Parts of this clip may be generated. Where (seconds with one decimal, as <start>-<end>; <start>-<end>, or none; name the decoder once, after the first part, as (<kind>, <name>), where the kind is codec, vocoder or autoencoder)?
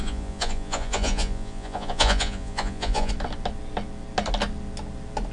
0.0-3.1 (vocoder, Vocos)